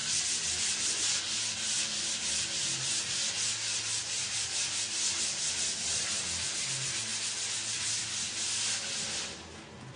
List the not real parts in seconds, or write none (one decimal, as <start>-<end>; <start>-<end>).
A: none